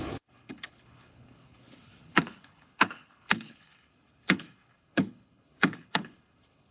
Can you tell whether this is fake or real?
fake